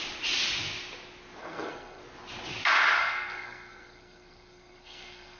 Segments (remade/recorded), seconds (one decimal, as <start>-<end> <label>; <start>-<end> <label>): 0.0-1.4 recorded; 1.4-2.0 remade; 2.0-3.0 recorded; 3.0-5.4 remade